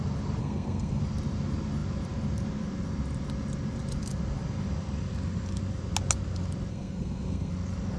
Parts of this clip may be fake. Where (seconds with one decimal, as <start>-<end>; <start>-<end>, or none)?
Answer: 0.4-1.0; 6.7-7.5